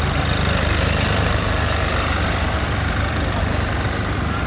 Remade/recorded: recorded